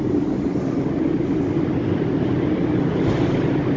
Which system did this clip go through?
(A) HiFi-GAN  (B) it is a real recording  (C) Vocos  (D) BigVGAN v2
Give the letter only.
B